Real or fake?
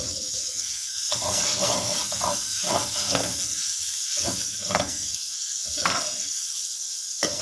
fake